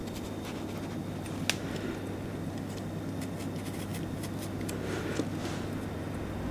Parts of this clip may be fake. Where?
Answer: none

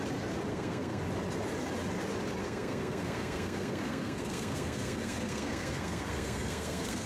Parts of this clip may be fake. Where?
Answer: 0.5-1.0 (codec, SNAC); 2.4-7.1